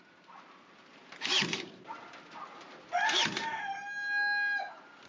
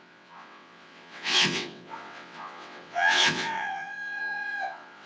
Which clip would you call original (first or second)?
first